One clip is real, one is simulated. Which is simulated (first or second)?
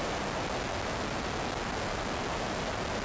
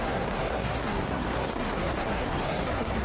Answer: second